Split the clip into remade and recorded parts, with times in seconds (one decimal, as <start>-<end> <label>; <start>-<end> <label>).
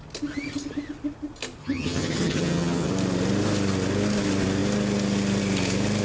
0.0-1.6 recorded; 1.6-2.9 remade; 2.9-6.0 recorded